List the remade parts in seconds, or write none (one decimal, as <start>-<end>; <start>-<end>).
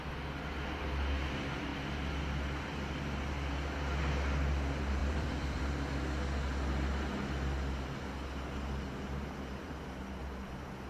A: 5.0-5.6